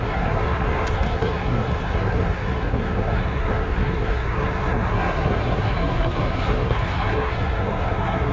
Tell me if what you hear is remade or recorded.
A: remade